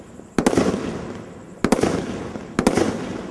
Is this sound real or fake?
real